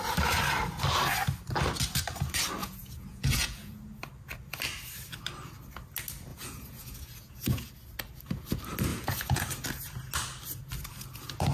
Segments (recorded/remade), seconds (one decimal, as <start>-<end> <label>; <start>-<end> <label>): 0.0-2.6 recorded; 2.6-3.8 remade; 3.8-6.3 recorded; 6.3-7.7 remade; 7.7-8.9 recorded; 8.9-9.5 remade; 9.5-11.5 recorded